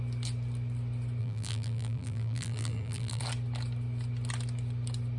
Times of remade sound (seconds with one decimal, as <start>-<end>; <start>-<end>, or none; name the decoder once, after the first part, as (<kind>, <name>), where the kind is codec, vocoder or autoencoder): 1.2-3.2 (vocoder, BigVGAN v2)